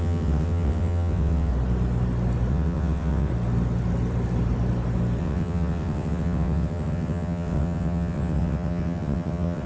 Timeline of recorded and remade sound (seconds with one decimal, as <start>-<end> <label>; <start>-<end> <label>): 0.0-1.5 remade; 1.5-2.5 recorded; 2.5-3.3 remade; 3.3-5.2 recorded; 5.2-9.7 remade